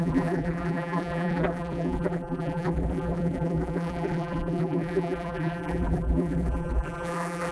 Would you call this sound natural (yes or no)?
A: no